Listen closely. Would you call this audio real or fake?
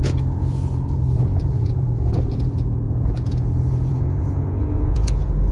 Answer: fake